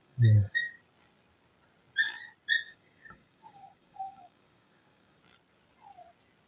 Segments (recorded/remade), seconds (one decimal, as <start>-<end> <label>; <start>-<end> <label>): 0.0-0.8 remade; 0.8-2.7 recorded; 2.7-5.2 remade; 5.2-6.5 recorded